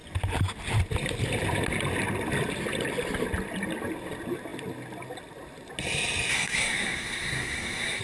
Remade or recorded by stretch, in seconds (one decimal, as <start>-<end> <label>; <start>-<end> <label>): 0.0-6.3 recorded; 6.3-8.0 remade